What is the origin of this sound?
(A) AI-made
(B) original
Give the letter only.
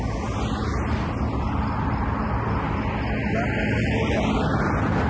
B